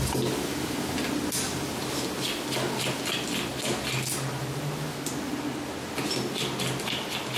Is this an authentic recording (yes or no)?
yes